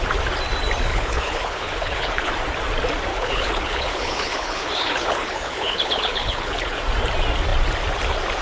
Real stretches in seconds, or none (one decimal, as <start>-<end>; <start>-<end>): 0.0-0.9; 2.3-3.1; 6.8-8.4